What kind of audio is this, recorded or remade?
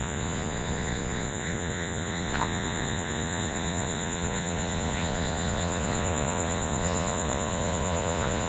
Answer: remade